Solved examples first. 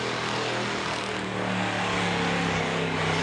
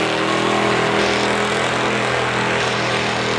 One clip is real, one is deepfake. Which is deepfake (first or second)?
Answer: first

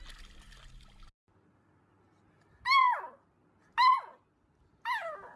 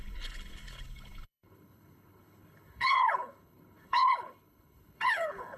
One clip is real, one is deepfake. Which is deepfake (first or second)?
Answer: second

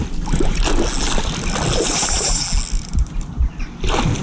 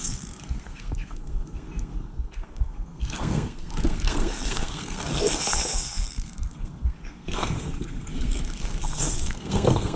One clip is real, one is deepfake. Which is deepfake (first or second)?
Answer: second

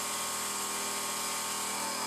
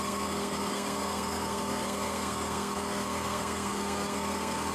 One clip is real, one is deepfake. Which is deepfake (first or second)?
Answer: second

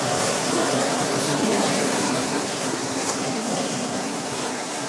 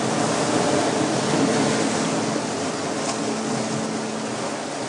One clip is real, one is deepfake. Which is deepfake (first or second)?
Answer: first